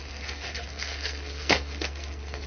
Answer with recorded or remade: remade